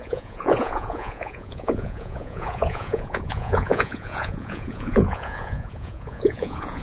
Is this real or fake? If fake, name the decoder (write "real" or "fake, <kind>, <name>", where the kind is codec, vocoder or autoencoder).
fake, vocoder, Vocos